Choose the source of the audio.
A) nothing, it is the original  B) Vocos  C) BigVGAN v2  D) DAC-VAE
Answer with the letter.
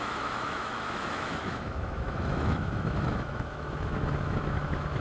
D